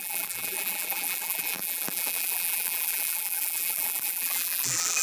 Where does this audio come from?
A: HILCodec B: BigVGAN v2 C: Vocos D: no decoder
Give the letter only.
B